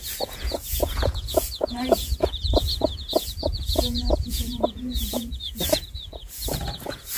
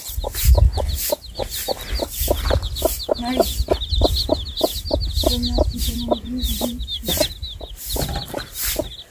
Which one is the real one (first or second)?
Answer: second